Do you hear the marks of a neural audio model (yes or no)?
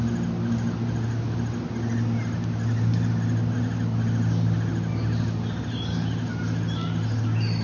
no